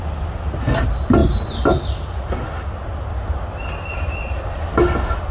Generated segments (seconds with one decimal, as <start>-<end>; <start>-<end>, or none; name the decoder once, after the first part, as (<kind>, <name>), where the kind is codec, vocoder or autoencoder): none

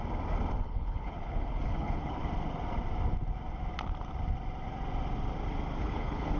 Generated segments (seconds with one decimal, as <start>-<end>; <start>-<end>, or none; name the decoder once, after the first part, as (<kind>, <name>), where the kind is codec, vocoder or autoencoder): 0.6-2.2 (codec, HILCodec); 5.8-6.4

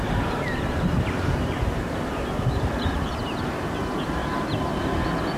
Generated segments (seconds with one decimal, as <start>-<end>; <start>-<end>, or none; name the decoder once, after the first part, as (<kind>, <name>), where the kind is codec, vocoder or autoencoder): 0.0-4.2 (vocoder, BigVGAN v2); 4.8-5.4

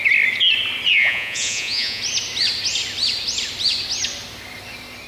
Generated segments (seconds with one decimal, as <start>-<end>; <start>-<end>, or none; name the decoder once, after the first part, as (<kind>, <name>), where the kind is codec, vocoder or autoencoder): 1.0-2.0 (vocoder, Vocos)

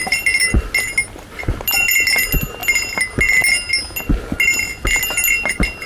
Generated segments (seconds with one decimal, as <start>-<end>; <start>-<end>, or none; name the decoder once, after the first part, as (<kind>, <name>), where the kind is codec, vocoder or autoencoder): none

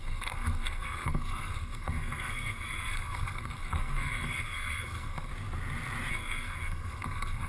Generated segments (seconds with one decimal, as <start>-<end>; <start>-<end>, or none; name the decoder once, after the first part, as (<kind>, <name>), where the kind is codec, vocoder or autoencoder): 0.0-5.3 (codec, SNAC); 6.1-7.5